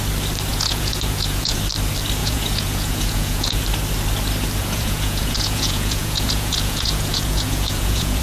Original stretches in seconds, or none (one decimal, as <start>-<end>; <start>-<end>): 0.0-0.5; 1.6-2.2; 3.6-4.6